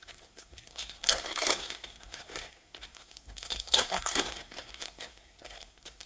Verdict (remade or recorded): remade